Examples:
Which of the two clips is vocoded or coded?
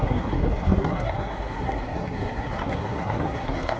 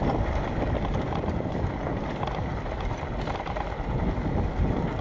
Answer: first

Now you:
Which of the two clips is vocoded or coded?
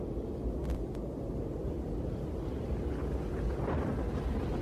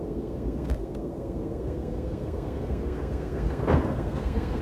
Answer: second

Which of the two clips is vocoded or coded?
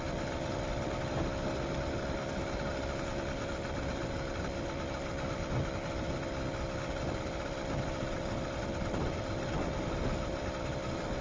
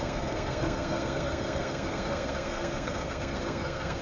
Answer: second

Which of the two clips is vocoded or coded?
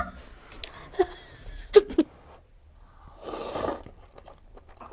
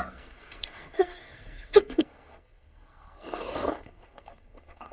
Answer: second